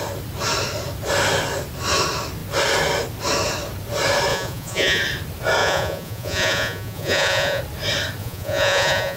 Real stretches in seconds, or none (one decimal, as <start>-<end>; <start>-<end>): 0.0-4.3; 5.0-5.6; 7.6-8.2